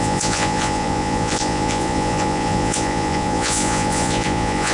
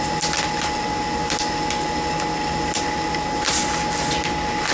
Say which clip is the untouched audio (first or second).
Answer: second